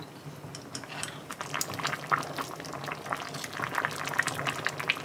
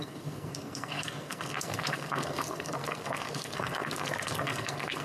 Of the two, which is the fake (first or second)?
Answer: second